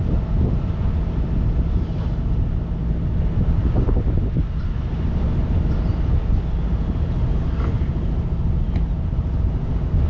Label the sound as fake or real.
real